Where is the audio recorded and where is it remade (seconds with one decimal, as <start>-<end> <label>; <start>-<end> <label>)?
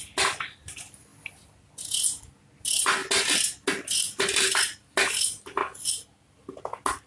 0.0-7.1 recorded